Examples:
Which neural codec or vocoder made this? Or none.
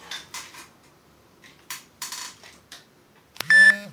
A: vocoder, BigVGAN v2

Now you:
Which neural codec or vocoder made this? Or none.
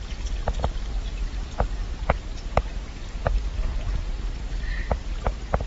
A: none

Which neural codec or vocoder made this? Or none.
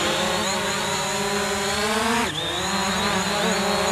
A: none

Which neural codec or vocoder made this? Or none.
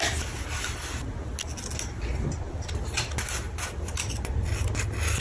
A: none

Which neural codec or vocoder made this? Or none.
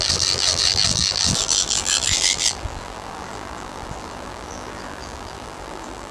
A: vocoder, BigVGAN v2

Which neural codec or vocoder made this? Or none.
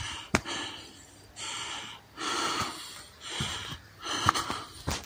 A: vocoder, BigVGAN v2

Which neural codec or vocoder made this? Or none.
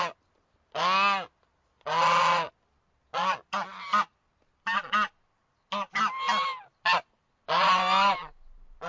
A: none